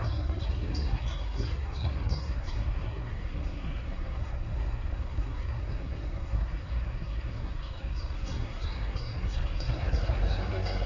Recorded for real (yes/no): no